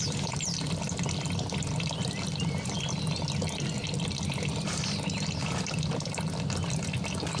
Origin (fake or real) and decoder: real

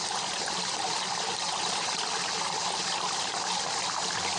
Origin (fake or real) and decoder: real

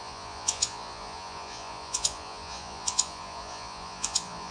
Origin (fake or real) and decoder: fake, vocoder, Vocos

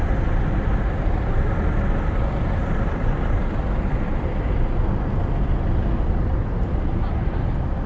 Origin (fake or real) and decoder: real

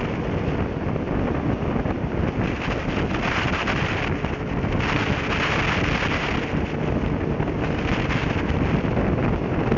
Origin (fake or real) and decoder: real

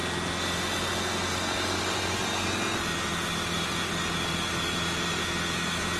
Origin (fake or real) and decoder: real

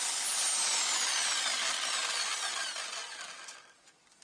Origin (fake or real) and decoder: real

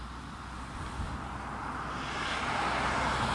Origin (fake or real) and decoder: real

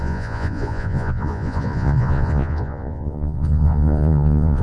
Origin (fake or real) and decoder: fake, vocoder, Vocos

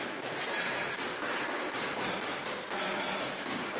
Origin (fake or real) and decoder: real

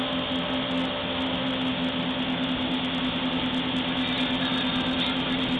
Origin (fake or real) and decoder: real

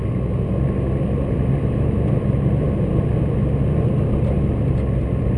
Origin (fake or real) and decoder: real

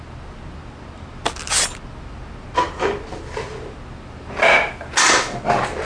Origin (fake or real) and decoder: real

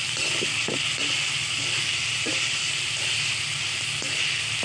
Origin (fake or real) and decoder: real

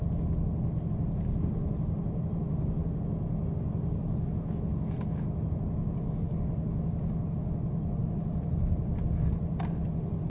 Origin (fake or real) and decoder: real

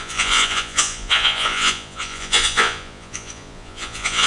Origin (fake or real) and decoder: fake, vocoder, Vocos